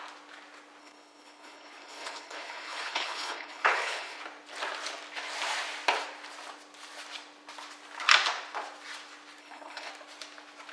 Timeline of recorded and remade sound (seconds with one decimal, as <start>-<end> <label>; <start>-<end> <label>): 0.0-0.8 recorded; 0.8-4.2 remade; 4.2-9.4 recorded; 9.4-9.9 remade; 9.9-10.7 recorded